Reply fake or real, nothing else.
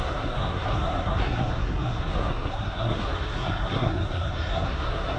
fake